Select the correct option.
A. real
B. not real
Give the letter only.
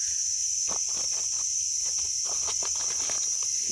A